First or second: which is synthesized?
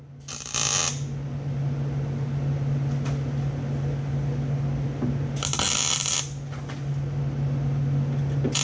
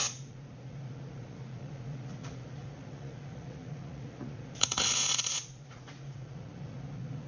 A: second